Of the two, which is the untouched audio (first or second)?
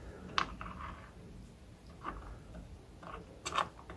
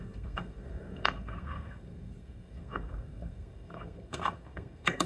first